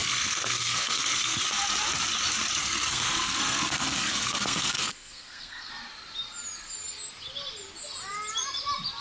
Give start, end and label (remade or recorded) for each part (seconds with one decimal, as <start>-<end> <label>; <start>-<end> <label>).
0.0-1.4 remade; 1.4-2.6 recorded; 2.6-5.7 remade; 5.7-9.0 recorded